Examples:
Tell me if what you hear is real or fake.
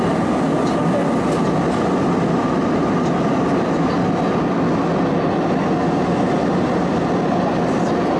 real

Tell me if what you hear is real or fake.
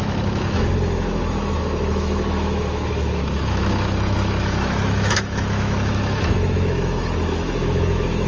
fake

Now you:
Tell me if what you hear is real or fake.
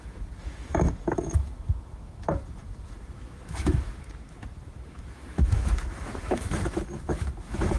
fake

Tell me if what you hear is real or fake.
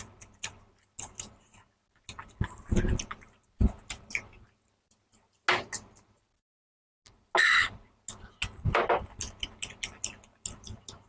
real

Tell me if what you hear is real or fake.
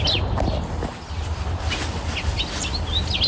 real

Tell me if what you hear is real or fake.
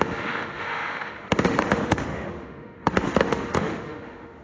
fake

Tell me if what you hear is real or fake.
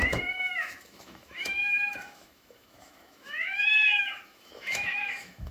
fake